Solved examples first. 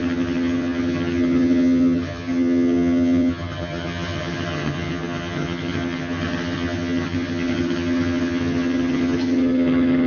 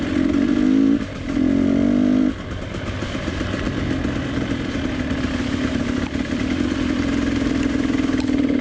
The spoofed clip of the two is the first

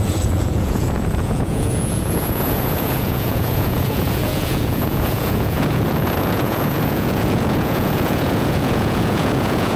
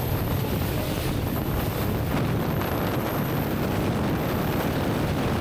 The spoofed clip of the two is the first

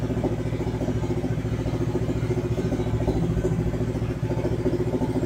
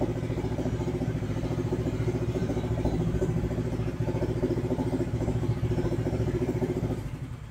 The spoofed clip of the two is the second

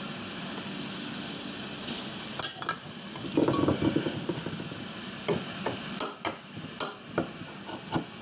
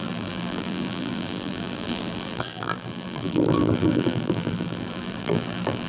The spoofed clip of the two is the second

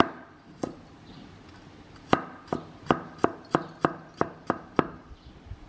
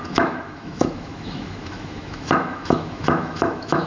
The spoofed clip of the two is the second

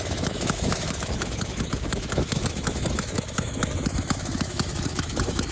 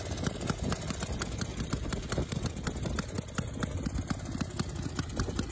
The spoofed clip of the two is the first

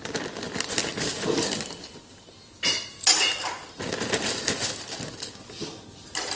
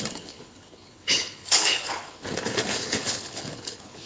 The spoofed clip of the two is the second